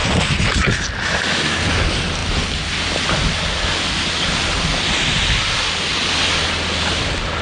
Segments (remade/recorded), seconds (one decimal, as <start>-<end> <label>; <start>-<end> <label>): 0.0-1.2 remade; 1.2-7.4 recorded